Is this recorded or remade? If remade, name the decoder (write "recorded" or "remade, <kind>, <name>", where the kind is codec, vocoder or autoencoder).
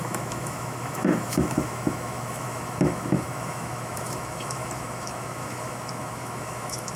remade, autoencoder, DAC-VAE